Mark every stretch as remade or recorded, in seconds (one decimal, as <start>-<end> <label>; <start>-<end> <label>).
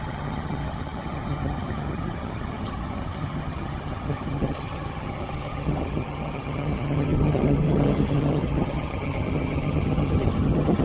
0.0-10.8 remade